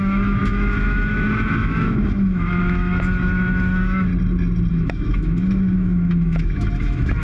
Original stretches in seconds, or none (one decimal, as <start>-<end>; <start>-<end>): 4.1-4.7